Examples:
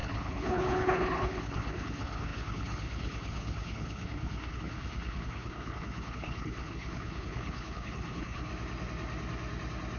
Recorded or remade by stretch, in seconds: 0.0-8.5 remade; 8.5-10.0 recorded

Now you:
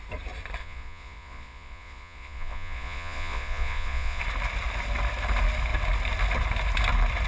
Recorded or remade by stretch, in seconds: 0.0-0.6 recorded; 0.6-4.2 remade; 4.2-7.3 recorded